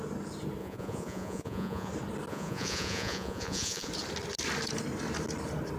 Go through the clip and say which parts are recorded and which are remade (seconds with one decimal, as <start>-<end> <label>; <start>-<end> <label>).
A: 0.0-0.6 recorded; 0.6-1.9 remade; 1.9-2.3 recorded; 2.3-3.9 remade; 3.9-5.8 recorded